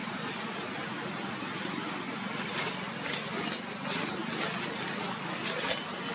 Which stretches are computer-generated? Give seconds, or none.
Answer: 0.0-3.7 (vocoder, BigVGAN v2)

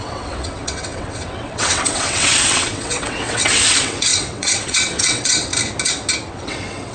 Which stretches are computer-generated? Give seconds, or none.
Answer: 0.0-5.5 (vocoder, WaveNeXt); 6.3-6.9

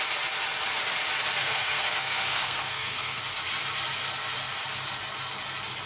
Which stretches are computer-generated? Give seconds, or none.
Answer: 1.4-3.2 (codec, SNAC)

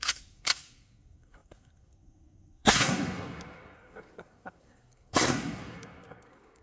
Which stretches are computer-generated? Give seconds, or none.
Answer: 0.0-6.6 (codec, SNAC)

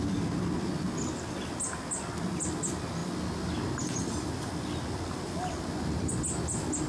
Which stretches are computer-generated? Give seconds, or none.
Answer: none

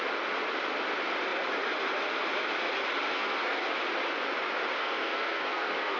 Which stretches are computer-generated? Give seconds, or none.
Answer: 3.1-3.7 (codec, SNAC); 4.8-6.0